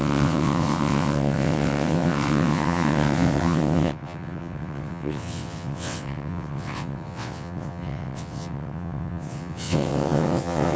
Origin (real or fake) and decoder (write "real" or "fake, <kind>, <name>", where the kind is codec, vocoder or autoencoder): fake, vocoder, WaveNeXt